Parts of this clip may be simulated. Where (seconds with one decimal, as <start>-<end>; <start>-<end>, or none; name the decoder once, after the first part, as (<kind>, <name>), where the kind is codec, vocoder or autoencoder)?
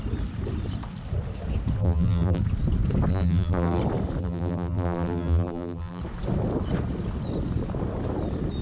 1.8-2.4 (vocoder, BigVGAN v2); 3.1-3.8; 4.2-6.0